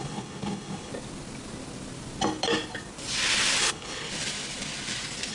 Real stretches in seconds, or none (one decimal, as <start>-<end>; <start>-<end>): 0.9-3.6; 4.1-5.3